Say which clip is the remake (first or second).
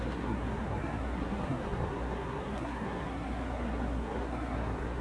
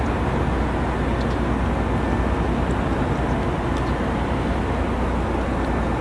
first